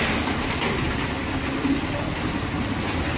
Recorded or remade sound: recorded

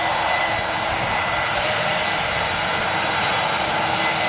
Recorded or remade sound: recorded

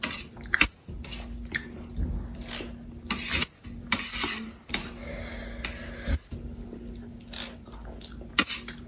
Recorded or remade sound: recorded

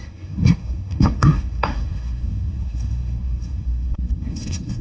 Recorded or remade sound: remade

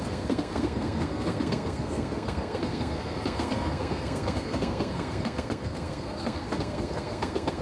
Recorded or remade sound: remade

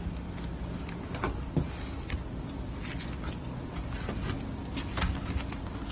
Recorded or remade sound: recorded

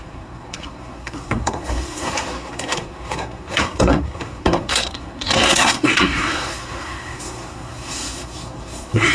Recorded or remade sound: remade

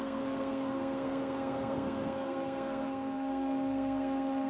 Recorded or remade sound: remade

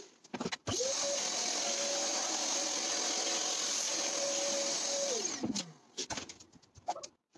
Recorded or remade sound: recorded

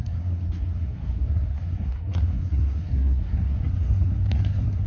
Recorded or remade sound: remade